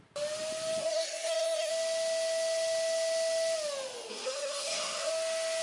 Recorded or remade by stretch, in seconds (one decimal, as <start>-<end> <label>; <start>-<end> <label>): 0.0-0.8 recorded; 0.8-1.7 remade; 1.7-4.1 recorded; 4.1-5.1 remade; 5.1-5.6 recorded